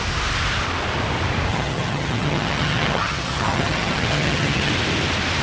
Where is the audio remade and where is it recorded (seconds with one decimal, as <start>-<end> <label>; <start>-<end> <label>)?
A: 0.0-1.5 recorded; 1.5-4.7 remade; 4.7-5.4 recorded